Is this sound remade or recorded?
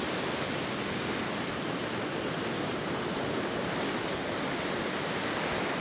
recorded